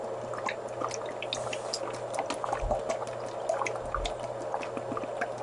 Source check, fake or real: real